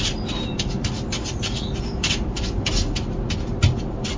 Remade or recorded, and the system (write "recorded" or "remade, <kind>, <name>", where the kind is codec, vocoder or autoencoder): recorded